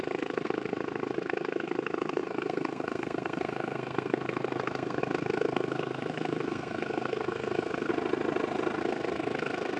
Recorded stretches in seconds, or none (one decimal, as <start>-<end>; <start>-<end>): 7.9-8.8